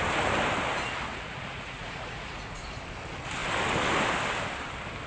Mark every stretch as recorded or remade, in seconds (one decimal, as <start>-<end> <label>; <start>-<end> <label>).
0.0-1.1 recorded; 1.1-2.6 remade; 2.6-5.1 recorded